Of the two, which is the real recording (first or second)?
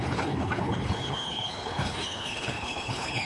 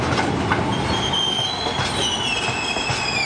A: second